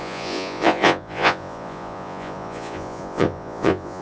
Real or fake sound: fake